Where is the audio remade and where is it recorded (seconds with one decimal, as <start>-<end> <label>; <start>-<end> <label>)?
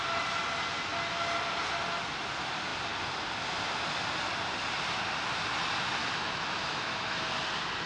0.0-6.0 recorded; 6.0-7.2 remade; 7.2-7.9 recorded